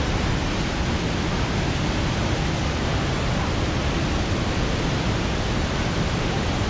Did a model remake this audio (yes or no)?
no